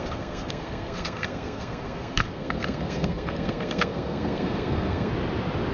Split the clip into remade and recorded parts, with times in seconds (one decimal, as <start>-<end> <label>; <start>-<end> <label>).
0.0-5.1 remade; 5.1-5.7 recorded